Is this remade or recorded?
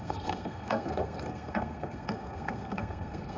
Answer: remade